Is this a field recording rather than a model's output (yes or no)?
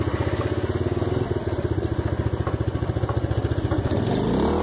yes